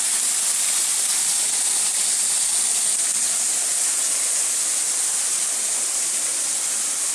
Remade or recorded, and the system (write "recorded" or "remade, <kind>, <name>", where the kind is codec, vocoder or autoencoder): recorded